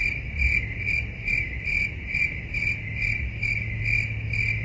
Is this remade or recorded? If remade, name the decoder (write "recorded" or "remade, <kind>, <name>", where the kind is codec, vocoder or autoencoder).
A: recorded